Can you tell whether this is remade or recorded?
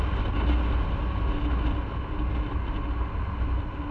recorded